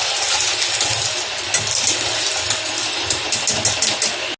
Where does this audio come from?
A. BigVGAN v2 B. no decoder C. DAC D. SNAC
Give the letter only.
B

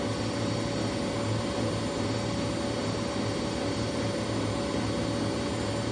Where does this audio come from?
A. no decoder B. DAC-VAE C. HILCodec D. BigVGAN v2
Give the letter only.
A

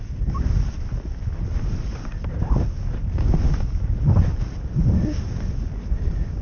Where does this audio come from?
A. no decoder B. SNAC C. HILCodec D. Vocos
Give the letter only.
A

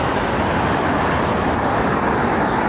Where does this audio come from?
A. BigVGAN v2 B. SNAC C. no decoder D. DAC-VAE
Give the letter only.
C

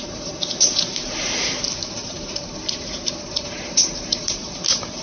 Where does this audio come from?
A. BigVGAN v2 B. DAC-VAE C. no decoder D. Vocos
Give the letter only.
A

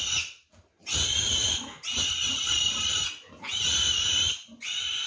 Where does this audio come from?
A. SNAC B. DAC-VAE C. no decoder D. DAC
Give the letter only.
C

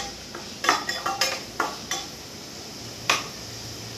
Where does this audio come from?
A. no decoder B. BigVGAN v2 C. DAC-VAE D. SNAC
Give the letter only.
A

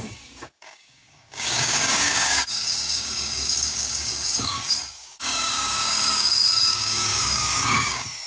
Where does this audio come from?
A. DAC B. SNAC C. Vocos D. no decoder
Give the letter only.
A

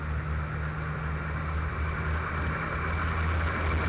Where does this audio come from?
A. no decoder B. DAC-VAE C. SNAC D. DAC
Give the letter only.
A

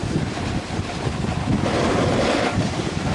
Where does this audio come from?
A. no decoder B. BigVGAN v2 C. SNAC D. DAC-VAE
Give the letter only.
A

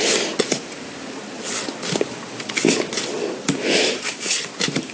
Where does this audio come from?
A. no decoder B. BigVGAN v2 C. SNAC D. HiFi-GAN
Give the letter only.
A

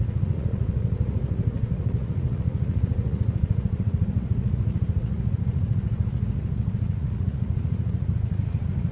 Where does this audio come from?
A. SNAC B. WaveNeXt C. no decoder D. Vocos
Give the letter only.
D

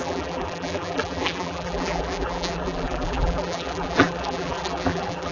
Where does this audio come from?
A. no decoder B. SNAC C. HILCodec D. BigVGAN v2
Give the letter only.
D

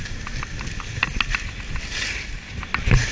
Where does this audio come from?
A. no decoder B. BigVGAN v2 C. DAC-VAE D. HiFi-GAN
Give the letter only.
A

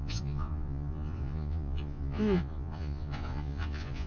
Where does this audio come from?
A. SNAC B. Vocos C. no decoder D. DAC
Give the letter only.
B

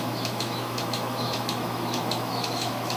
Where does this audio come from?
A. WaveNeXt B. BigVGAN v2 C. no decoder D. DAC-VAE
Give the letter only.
D